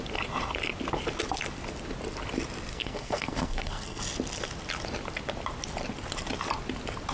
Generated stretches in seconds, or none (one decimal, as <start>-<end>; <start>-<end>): 2.7-4.0